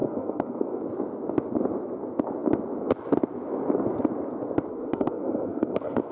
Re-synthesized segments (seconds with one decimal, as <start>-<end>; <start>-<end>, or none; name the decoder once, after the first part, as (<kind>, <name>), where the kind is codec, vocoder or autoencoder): 0.0-0.8 (codec, SNAC); 4.7-6.1